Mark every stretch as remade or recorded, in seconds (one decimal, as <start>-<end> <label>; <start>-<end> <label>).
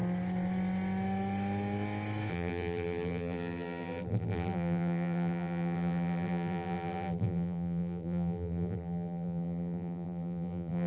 0.0-2.3 recorded; 2.3-10.9 remade